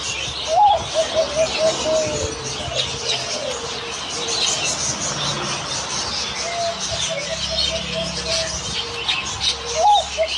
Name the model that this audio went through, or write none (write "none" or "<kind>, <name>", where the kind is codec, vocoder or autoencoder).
none